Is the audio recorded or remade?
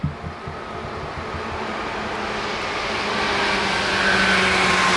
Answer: recorded